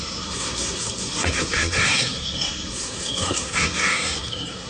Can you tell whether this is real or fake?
fake